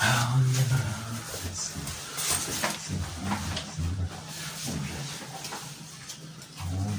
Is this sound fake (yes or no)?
no